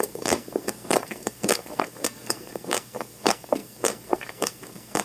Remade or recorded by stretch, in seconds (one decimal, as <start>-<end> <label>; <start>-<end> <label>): 0.0-5.0 remade